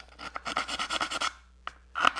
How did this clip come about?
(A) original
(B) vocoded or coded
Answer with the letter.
A